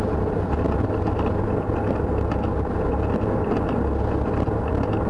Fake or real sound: real